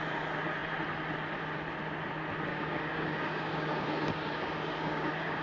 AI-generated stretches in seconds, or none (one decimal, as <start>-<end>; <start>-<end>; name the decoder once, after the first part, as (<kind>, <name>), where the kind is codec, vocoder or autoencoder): 2.5-5.4 (codec, DAC)